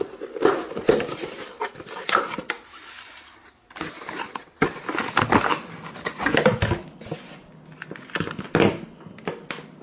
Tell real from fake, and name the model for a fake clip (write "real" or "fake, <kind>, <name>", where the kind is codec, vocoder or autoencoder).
real